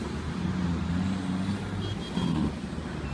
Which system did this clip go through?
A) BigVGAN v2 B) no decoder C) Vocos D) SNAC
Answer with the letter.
B